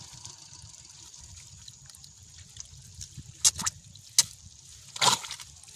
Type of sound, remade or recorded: recorded